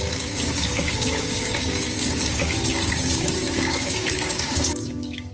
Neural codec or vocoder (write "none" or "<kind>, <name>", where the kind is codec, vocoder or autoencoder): codec, DAC